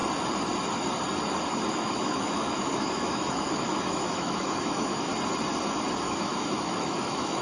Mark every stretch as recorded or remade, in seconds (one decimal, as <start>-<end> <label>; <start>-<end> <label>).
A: 0.0-1.7 recorded; 1.7-5.1 remade; 5.1-6.0 recorded; 6.0-7.4 remade